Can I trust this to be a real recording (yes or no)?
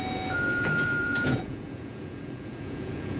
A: no